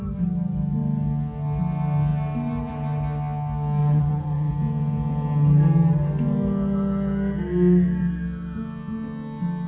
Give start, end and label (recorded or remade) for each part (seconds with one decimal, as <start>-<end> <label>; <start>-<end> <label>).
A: 0.0-3.8 recorded; 3.8-4.5 remade; 4.5-9.7 recorded